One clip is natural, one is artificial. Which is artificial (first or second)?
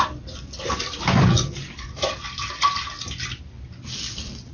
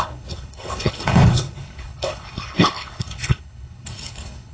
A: second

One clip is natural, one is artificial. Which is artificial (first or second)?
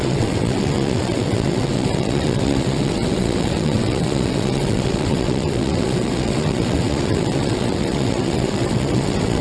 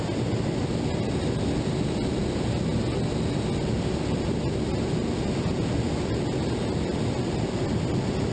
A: first